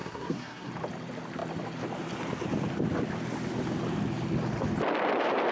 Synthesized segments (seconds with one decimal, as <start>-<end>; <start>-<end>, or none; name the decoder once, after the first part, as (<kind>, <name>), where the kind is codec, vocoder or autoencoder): 0.0-0.7 (codec, SNAC)